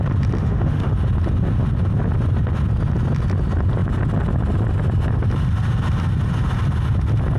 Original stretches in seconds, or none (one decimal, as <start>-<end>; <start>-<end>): 0.0-0.4; 0.9-7.4